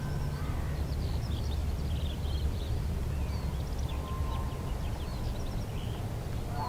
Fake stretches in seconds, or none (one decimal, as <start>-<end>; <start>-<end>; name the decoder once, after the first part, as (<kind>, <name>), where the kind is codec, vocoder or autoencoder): 1.6-2.9 (vocoder, BigVGAN v2)